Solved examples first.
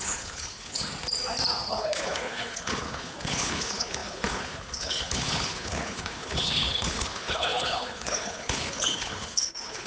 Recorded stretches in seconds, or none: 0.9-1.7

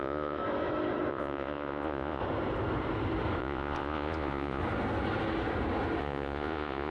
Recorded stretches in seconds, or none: 0.4-1.1; 2.2-3.4; 4.6-6.0

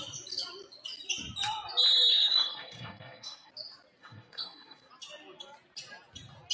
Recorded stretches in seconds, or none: 0.0-2.1; 3.5-4.0; 4.9-6.5

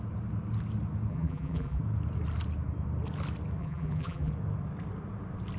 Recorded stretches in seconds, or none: 0.0-1.1; 1.8-3.6; 4.3-5.6

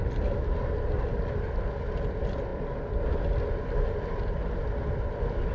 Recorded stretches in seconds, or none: 0.0-5.5

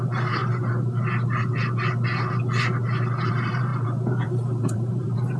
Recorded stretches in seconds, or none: 0.4-3.3

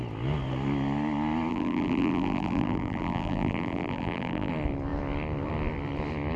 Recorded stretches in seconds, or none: 0.0-1.5; 4.5-6.4

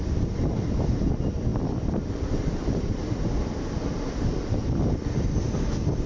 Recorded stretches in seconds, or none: 0.0-1.5; 4.1-6.1